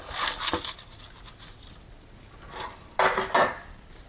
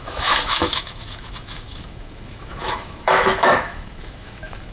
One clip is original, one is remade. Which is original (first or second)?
first